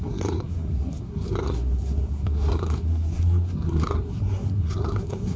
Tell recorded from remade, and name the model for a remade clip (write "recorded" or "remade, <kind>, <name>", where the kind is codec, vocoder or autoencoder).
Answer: remade, codec, SNAC